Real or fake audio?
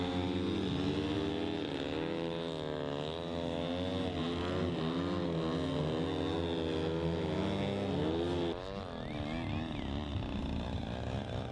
real